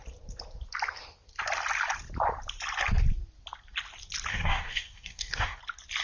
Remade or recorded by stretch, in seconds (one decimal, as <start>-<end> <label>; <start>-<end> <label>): 0.0-4.3 recorded; 4.3-5.6 remade; 5.6-6.0 recorded